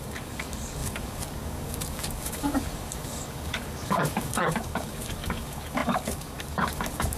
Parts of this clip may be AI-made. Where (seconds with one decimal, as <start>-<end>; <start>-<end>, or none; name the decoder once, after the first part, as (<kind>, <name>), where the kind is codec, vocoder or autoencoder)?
0.0-7.2 (codec, DAC)